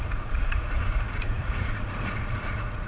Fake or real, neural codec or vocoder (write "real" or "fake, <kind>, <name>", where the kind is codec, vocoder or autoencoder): fake, vocoder, Vocos